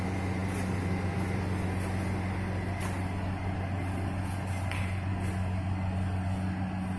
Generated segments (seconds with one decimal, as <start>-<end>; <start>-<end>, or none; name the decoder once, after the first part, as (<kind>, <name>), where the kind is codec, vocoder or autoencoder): none